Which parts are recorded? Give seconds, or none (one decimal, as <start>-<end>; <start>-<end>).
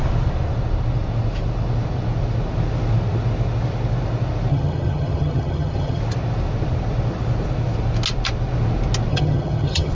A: 0.0-4.5; 6.0-9.1